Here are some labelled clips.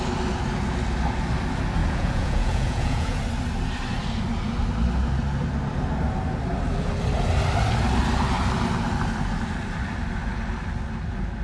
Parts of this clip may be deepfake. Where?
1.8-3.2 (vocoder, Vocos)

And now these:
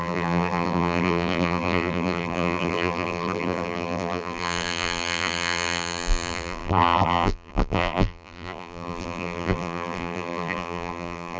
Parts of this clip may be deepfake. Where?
0.0-11.4 (vocoder, BigVGAN v2)

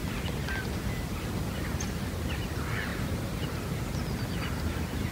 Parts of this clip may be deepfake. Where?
none

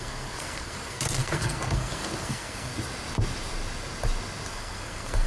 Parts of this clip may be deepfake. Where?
0.0-2.7 (codec, SNAC); 4.5-5.3

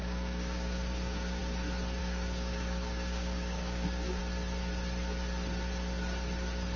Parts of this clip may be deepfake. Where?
0.0-1.4 (codec, DAC); 2.0-4.2